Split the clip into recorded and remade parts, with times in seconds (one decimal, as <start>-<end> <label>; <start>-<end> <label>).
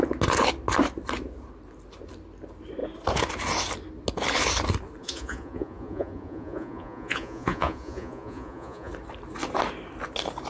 0.0-5.0 recorded; 5.0-8.9 remade; 8.9-10.5 recorded